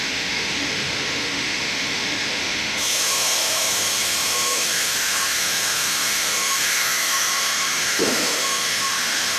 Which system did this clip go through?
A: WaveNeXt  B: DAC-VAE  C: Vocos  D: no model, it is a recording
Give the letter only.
B